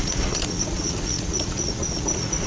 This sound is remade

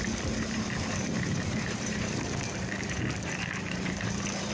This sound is remade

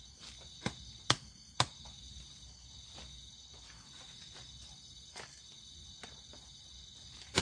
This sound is recorded